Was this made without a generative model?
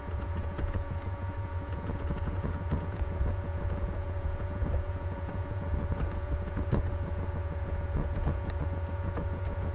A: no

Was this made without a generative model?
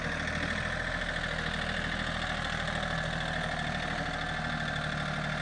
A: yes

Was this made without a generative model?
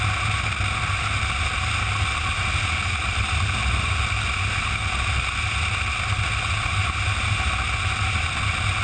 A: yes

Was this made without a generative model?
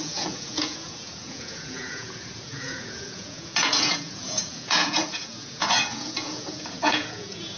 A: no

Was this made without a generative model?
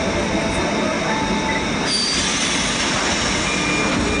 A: yes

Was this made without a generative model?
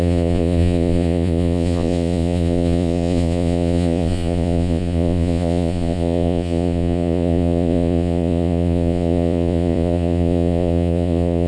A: no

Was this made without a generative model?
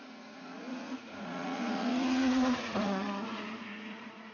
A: no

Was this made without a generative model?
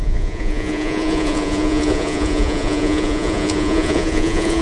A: no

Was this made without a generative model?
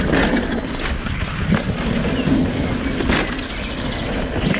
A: yes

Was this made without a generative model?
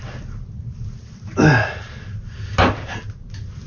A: yes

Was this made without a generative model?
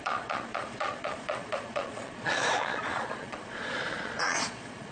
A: no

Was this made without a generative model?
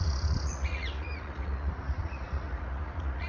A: no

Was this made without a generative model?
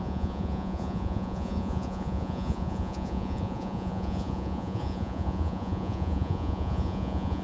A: no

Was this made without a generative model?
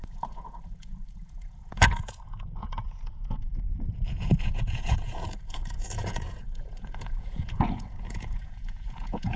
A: no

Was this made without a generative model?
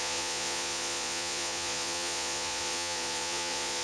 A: no